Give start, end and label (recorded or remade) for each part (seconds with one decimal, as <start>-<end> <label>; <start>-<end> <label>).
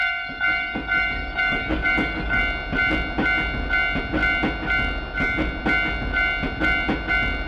0.0-2.4 remade; 2.4-7.5 recorded